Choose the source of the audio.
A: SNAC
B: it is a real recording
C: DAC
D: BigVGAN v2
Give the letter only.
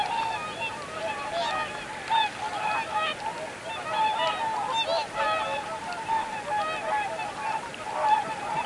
B